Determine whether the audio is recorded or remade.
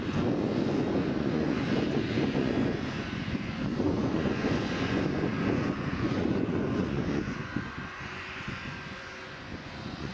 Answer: remade